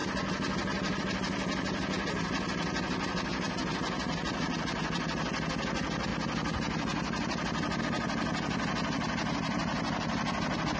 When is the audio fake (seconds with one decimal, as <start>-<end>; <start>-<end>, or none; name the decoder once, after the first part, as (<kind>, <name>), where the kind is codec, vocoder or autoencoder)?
none

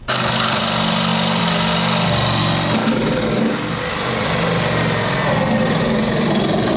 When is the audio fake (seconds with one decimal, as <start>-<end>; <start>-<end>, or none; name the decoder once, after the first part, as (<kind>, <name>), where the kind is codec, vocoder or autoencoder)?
0.0-0.6 (codec, DAC); 2.8-3.9

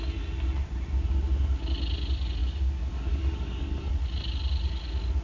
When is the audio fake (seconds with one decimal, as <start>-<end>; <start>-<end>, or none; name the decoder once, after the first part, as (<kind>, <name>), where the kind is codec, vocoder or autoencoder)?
2.4-3.9 (codec, DAC)

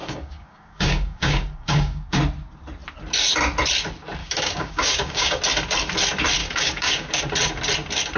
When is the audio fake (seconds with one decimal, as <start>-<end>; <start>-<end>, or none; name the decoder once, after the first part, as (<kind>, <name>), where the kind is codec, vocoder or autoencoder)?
0.0-2.2 (codec, DAC); 4.2-5.4; 6.4-7.2

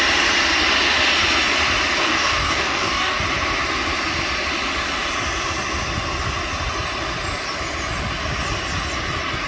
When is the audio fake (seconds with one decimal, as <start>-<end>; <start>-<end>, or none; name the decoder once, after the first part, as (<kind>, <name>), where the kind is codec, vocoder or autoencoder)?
2.0-3.2 (codec, DAC)